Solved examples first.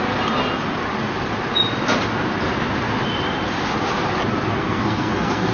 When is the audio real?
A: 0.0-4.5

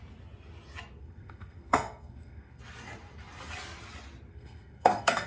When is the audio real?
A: 0.0-1.0; 2.6-4.3

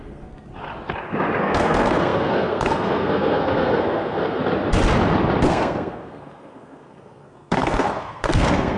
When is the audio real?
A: 0.5-1.4; 4.4-5.5

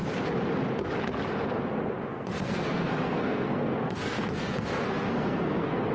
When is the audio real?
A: 0.0-2.1

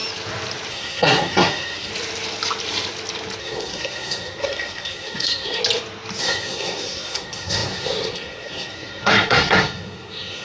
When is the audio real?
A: 0.0-0.7; 1.9-3.4; 5.6-6.2

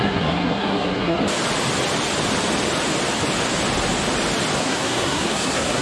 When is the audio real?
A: 1.2-4.6

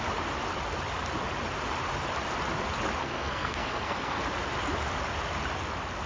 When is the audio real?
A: 0.0-3.0; 4.2-6.1

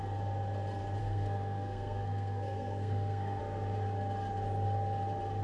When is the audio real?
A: 0.0-1.0; 3.4-5.4